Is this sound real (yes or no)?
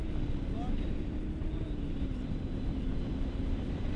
yes